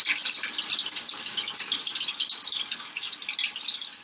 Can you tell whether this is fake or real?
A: real